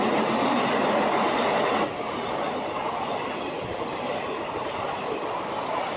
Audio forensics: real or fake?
real